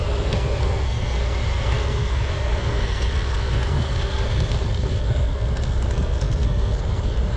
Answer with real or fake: fake